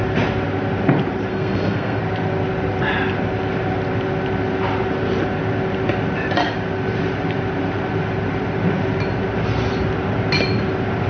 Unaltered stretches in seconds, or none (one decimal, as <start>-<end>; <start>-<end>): 0.0-1.3; 2.0-11.1